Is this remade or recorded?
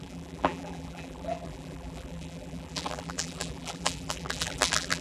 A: remade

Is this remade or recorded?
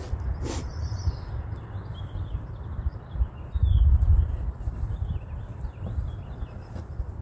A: recorded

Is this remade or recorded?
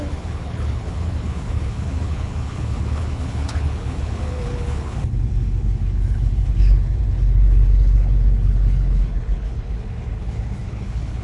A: remade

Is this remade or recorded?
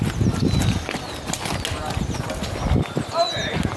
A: recorded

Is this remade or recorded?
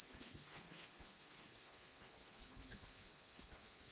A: remade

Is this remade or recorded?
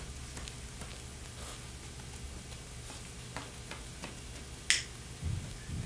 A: recorded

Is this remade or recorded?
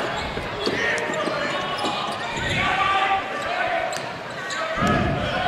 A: recorded